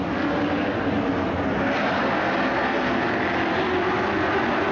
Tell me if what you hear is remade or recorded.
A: recorded